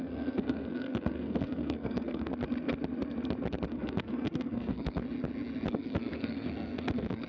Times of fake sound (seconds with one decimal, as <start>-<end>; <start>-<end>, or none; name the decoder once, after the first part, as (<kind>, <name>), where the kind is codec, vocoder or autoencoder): 0.0-2.3 (codec, SNAC); 3.7-5.0; 5.7-7.3

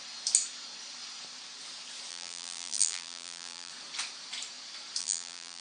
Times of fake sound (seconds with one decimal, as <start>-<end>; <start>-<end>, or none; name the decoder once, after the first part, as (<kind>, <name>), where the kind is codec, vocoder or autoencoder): 2.1-3.7 (vocoder, BigVGAN v2); 5.0-5.6